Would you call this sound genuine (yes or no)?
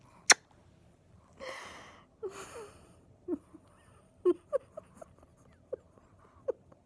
yes